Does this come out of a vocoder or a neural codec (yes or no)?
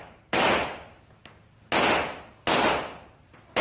no